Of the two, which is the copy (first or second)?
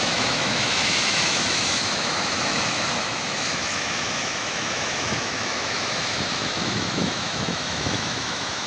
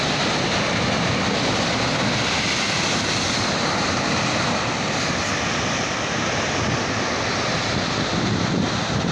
first